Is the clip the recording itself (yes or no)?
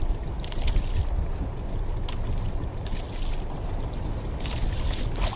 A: yes